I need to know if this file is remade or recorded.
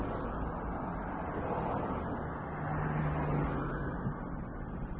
recorded